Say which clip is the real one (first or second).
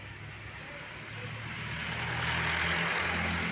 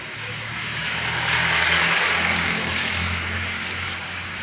first